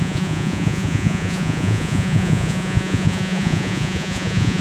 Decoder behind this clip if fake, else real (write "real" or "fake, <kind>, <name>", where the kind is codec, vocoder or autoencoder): fake, vocoder, Vocos